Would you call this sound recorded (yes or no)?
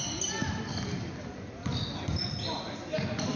yes